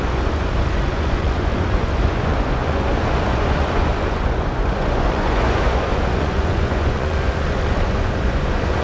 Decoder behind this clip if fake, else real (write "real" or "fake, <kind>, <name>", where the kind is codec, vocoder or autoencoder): fake, vocoder, Vocos